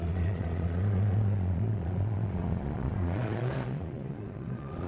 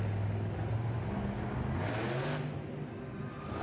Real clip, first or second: second